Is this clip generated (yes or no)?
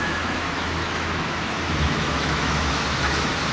yes